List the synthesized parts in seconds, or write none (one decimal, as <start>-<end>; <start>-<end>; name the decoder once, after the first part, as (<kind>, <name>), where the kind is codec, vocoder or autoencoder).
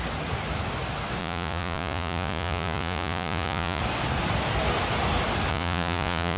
1.2-3.8 (vocoder, Vocos); 5.5-6.4